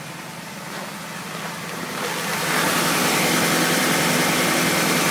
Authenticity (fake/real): real